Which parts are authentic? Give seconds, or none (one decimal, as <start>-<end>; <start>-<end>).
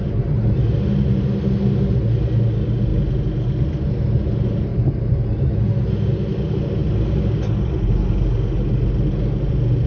0.0-9.9